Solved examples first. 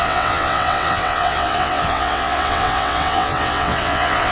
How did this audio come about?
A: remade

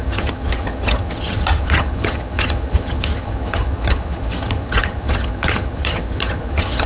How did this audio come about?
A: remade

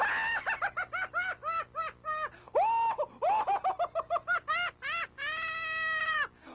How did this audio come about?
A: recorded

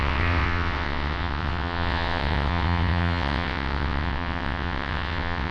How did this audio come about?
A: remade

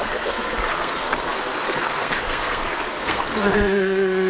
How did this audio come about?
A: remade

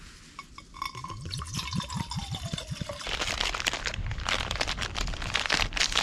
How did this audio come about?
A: recorded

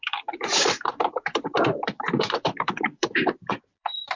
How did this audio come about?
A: remade